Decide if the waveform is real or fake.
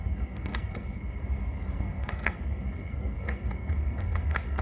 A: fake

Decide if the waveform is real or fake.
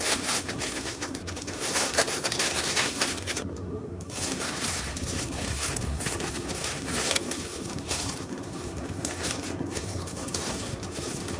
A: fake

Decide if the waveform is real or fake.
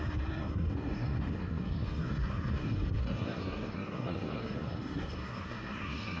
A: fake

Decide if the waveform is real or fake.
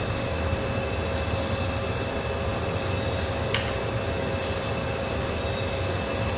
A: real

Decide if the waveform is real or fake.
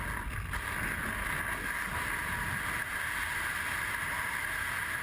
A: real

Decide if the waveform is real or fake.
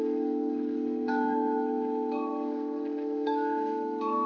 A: fake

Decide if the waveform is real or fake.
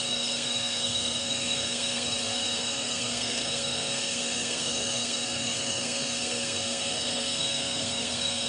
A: fake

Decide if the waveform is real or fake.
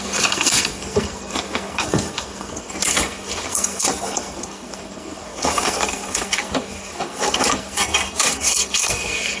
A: fake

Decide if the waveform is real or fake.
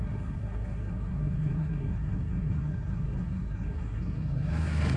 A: fake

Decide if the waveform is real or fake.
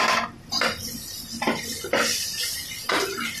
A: real